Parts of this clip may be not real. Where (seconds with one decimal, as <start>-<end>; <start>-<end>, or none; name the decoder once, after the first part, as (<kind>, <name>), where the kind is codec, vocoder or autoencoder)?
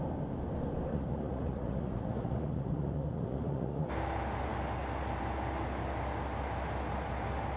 0.9-3.9 (vocoder, Vocos)